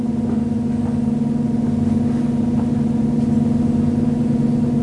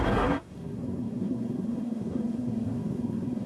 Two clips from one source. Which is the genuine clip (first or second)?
first